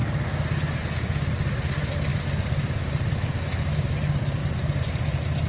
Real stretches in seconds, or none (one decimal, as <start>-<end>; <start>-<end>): 0.0-2.1; 3.1-4.4; 4.9-5.5